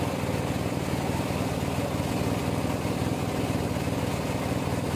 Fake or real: real